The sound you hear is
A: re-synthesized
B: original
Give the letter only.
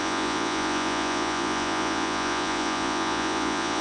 A